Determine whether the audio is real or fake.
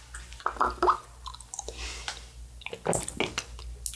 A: real